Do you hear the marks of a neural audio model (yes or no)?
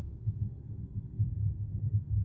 yes